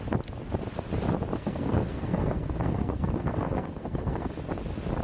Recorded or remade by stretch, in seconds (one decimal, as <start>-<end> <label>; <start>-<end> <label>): 0.0-1.3 recorded; 1.3-4.3 remade; 4.3-5.0 recorded